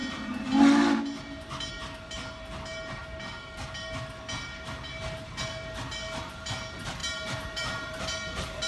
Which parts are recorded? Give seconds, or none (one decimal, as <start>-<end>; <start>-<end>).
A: 0.0-7.0; 8.0-8.7